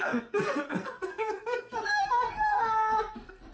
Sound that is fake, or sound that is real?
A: fake